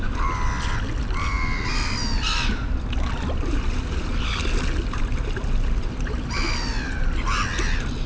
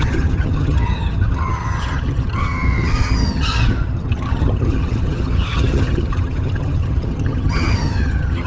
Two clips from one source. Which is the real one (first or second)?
first